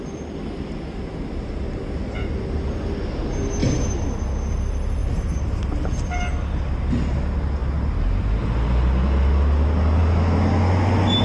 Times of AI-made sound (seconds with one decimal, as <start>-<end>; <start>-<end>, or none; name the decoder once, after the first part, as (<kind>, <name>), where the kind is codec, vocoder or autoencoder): none